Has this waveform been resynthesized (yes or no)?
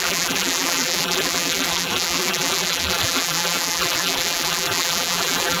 yes